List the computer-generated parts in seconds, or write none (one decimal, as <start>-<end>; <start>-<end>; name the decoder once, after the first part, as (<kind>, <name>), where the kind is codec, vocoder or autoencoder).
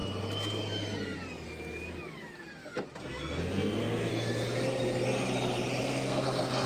3.0-4.1 (codec, SNAC); 5.8-6.7